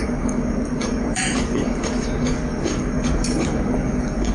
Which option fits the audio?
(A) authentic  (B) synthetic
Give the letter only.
B